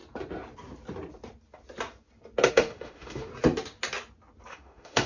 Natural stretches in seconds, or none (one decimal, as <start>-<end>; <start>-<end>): 0.0-2.5; 3.3-4.5